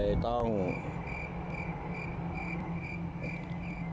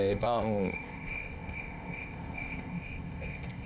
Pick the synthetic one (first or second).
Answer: second